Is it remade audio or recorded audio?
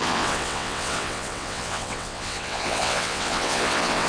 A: remade